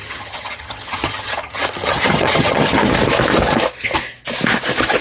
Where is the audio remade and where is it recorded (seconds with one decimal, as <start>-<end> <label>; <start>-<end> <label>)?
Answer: 0.0-2.9 remade; 2.9-5.0 recorded